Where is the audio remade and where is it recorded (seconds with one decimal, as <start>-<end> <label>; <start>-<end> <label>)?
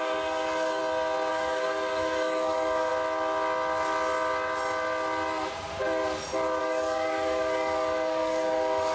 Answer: 0.0-0.8 remade; 0.8-1.3 recorded; 1.3-2.9 remade; 2.9-6.6 recorded; 6.6-8.9 remade